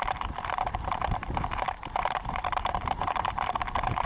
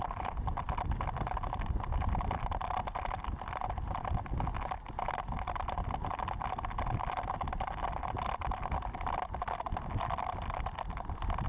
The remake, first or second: first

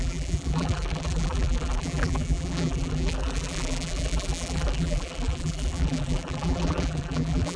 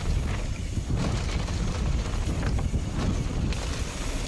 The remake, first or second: first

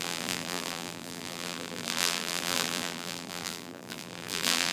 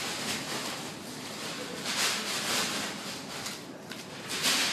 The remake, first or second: first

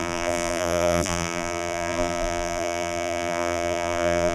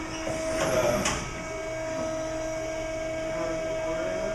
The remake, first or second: first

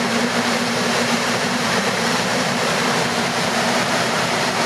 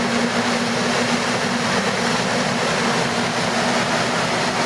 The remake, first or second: first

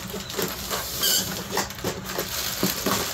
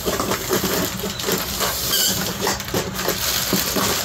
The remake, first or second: second